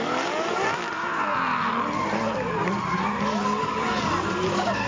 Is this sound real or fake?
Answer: real